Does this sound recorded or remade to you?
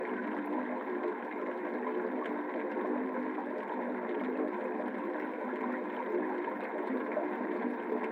remade